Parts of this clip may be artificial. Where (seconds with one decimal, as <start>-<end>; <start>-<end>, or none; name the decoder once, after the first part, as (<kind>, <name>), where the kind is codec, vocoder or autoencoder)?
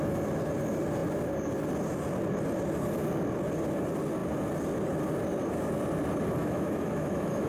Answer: 6.4-7.5 (autoencoder, DAC-VAE)